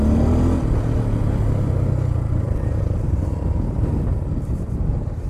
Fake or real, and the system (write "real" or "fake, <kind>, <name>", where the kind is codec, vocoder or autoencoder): real